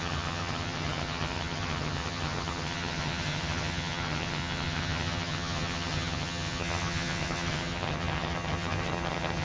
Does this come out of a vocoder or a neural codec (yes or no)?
yes